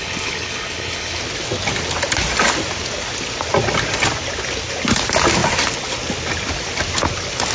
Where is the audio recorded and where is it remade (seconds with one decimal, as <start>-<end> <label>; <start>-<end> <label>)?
0.0-1.2 remade; 1.2-7.5 recorded